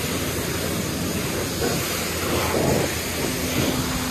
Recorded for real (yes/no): yes